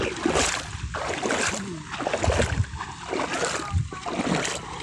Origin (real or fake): real